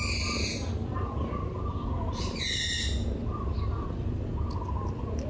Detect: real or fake real